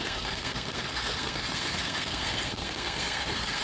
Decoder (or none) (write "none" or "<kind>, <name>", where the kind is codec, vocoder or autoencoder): codec, SNAC